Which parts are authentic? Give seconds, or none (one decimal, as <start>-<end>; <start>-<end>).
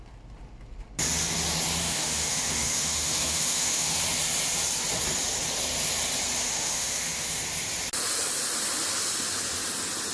0.0-1.8; 4.0-6.4; 7.4-10.1